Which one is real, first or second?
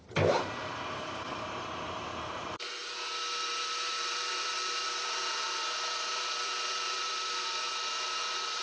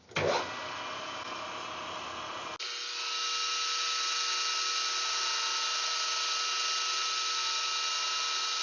second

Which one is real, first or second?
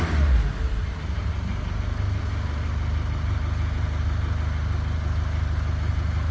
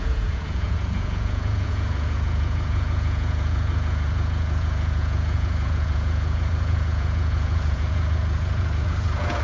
first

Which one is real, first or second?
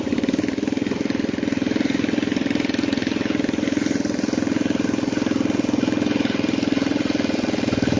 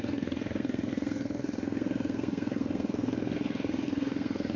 first